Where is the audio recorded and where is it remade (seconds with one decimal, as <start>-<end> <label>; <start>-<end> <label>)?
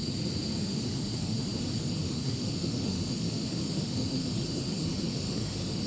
0.0-0.6 recorded; 0.6-5.9 remade